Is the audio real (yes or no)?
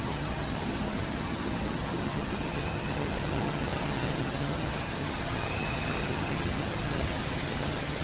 no